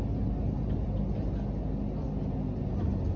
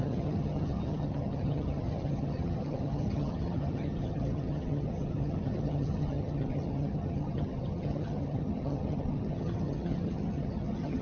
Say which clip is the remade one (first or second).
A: second